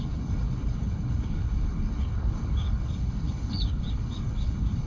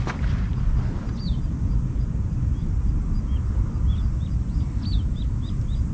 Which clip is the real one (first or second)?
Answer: second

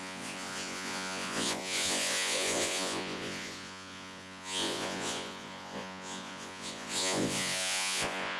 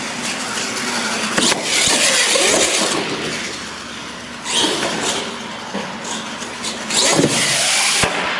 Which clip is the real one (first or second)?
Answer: second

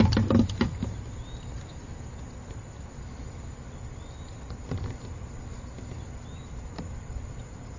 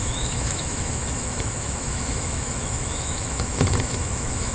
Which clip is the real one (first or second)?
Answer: first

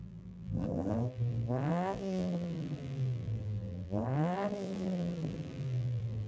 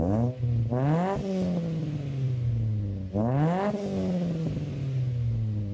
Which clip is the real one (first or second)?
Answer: second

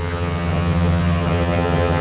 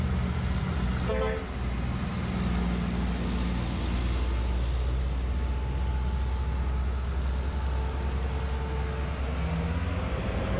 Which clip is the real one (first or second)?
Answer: second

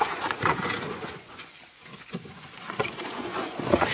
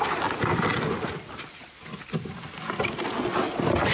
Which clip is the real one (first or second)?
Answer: second